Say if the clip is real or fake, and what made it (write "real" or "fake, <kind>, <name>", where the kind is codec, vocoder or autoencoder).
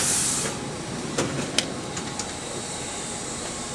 fake, vocoder, BigVGAN v2